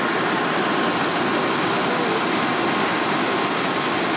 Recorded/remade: recorded